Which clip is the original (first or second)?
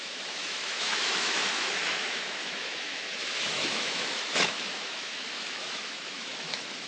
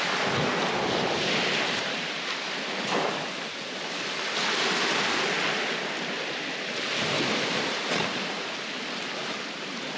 second